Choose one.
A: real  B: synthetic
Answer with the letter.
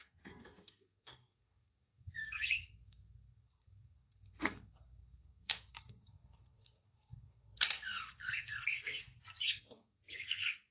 B